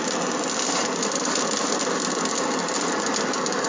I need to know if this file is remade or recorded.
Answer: recorded